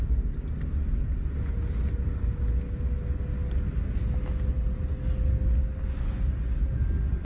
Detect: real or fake real